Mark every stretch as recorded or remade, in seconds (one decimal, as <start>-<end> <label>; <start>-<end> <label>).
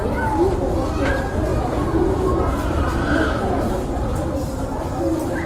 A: 0.0-1.5 recorded; 1.5-2.8 remade; 2.8-5.5 recorded